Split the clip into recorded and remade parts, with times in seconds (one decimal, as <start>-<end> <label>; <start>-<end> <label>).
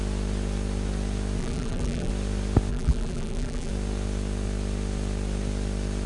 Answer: 0.0-1.4 recorded; 1.4-2.1 remade; 2.1-2.7 recorded; 2.7-3.7 remade; 3.7-6.1 recorded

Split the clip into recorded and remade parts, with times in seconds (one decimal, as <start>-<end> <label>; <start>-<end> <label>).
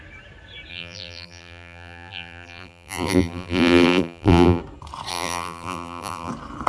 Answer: 0.0-0.7 recorded; 0.7-4.6 remade; 4.6-5.1 recorded; 5.1-6.3 remade; 6.3-6.7 recorded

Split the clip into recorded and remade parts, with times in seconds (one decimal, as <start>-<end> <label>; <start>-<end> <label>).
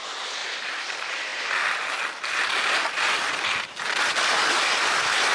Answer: 0.0-0.4 recorded; 0.4-0.9 remade; 0.9-5.3 recorded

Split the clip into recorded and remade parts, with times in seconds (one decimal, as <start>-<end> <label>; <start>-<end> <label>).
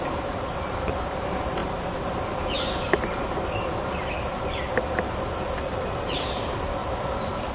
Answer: 0.0-6.8 recorded; 6.8-7.5 remade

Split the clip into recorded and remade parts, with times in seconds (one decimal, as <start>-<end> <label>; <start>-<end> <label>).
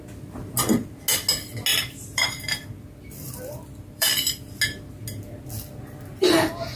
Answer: 0.0-1.7 recorded; 1.7-4.4 remade; 4.4-6.8 recorded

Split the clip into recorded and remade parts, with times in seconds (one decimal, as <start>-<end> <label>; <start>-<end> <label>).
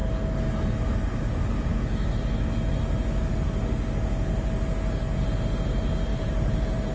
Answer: 0.0-6.1 recorded; 6.1-6.9 remade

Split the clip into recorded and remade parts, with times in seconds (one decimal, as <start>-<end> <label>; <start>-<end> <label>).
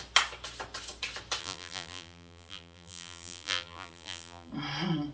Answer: 0.0-1.4 recorded; 1.4-4.5 remade; 4.5-5.1 recorded